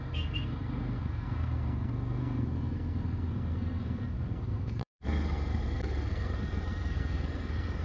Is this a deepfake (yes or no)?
yes